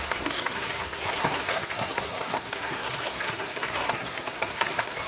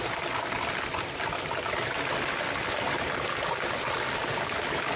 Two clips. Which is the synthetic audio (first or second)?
first